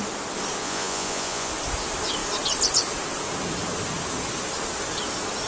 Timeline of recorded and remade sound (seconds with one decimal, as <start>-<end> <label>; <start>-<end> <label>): 0.0-0.6 recorded; 0.6-1.5 remade; 1.5-5.5 recorded